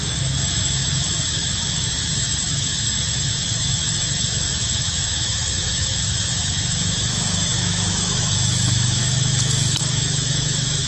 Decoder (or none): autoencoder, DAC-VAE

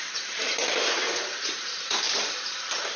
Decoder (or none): vocoder, BigVGAN v2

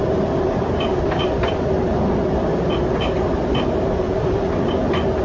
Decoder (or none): none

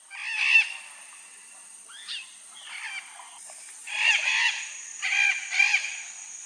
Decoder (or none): vocoder, BigVGAN v2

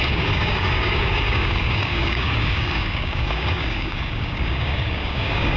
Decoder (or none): codec, DAC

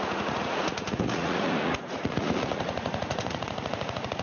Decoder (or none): vocoder, Vocos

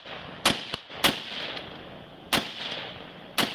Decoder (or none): none